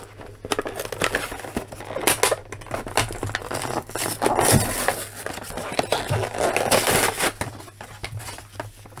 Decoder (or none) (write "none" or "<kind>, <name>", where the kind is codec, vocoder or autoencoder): none